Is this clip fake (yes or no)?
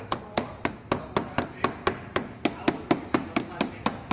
no